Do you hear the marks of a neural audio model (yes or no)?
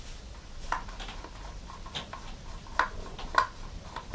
no